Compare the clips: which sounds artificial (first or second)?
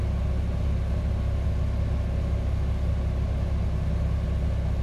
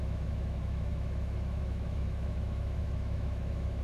second